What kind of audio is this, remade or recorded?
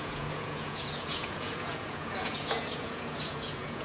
remade